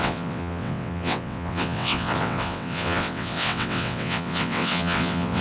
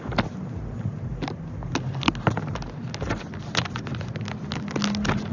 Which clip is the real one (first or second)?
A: second